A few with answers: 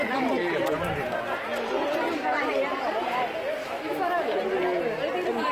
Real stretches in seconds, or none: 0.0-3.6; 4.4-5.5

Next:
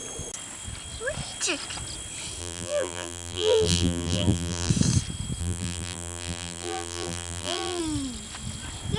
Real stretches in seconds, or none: 0.0-2.4; 4.7-5.4; 7.8-9.0